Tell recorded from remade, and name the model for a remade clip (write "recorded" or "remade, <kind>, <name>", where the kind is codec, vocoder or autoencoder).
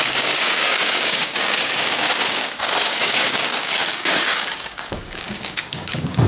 remade, codec, DAC